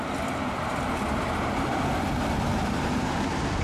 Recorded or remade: remade